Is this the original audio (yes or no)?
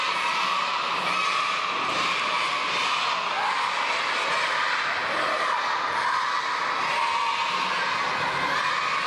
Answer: yes